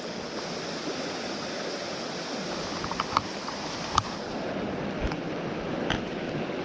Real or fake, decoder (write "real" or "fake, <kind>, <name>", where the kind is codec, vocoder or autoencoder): real